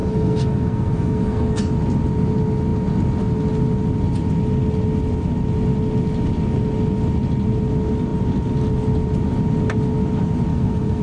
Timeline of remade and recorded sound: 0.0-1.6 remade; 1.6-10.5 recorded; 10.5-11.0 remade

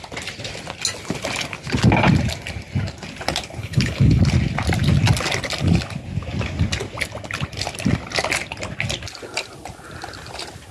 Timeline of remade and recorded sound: 0.0-3.6 recorded; 3.6-4.2 remade; 4.2-10.7 recorded

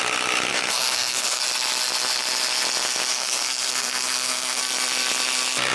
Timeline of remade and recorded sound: 0.0-0.5 recorded; 0.5-1.4 remade; 1.4-3.1 recorded; 3.1-4.6 remade; 4.6-5.7 recorded

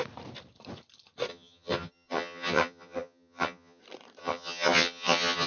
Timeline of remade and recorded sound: 0.0-1.3 recorded; 1.3-3.8 remade; 3.8-4.2 recorded; 4.2-5.5 remade

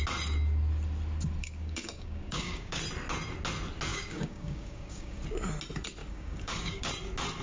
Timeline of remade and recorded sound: 0.0-1.4 recorded; 1.4-2.8 remade; 2.8-3.9 recorded; 3.9-5.2 remade; 5.2-6.0 recorded; 6.0-6.9 remade; 6.9-7.4 recorded